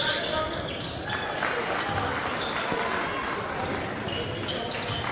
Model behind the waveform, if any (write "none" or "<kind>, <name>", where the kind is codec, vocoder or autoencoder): none